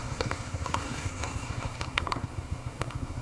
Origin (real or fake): fake